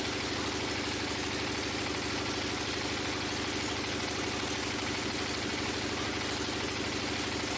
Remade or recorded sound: recorded